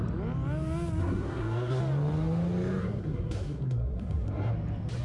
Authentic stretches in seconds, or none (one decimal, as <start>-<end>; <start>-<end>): 0.0-1.0; 1.8-2.8; 4.5-5.0